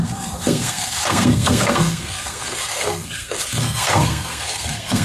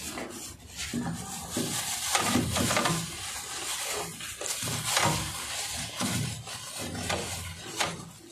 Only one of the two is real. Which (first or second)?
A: second